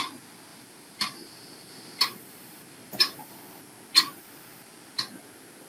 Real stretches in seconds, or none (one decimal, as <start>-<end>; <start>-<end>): 0.0-0.5; 3.4-5.7